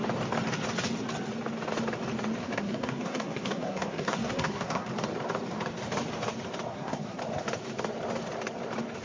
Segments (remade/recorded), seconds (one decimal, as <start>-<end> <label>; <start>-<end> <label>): 0.0-2.4 recorded; 2.4-4.9 remade; 4.9-6.7 recorded; 6.7-7.2 remade; 7.2-9.0 recorded